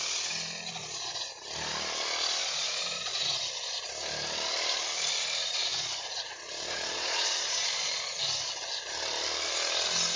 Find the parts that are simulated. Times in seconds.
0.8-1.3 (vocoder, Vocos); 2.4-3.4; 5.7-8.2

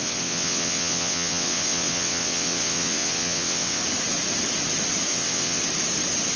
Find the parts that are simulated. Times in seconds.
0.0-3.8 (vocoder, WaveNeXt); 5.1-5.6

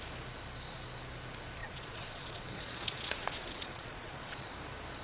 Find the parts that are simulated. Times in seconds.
1.6-4.5 (vocoder, Vocos)

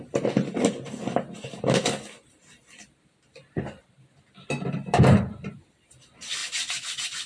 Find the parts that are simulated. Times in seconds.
none

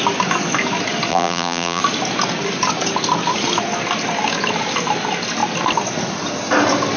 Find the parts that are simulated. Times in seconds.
1.1-1.8 (vocoder, BigVGAN v2)

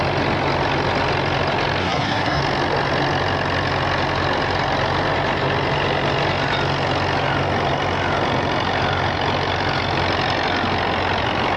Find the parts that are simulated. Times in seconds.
1.8-2.4 (codec, SNAC)